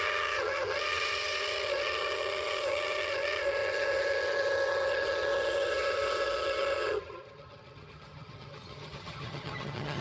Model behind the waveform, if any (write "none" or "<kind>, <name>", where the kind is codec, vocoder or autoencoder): vocoder, HiFi-GAN